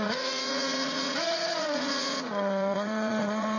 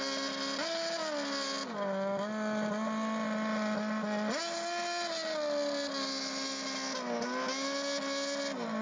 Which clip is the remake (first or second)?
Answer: first